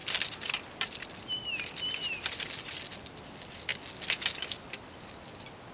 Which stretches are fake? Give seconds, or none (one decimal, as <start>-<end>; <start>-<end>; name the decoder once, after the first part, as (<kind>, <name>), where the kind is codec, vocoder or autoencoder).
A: 0.0-1.4 (vocoder, BigVGAN v2); 3.7-4.9